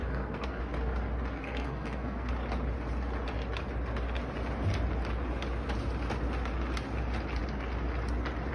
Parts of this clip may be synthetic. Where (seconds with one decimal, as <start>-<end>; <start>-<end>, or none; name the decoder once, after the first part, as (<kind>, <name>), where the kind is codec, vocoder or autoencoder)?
0.0-0.6 (codec, SNAC); 1.4-2.3